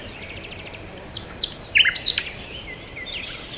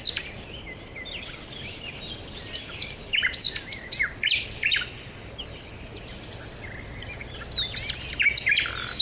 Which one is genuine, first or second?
second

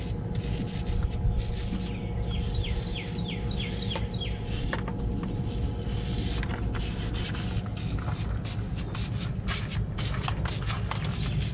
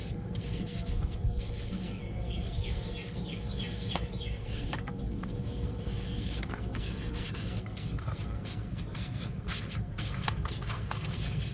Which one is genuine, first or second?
first